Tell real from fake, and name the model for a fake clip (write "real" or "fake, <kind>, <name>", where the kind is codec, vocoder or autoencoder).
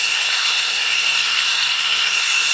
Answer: fake, codec, SNAC